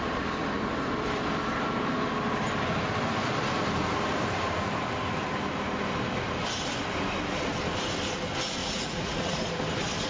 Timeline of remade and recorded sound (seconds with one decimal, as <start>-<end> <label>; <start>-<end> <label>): 0.0-8.6 recorded; 8.6-9.4 remade; 9.4-10.1 recorded